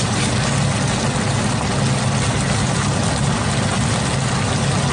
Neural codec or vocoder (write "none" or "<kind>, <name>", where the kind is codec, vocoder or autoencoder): none